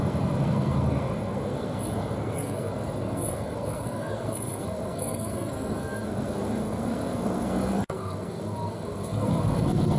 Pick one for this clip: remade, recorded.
remade